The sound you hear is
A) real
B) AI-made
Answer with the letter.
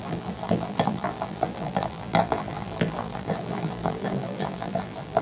B